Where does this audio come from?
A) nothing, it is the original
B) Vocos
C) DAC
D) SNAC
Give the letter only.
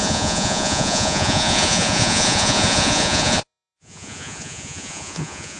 B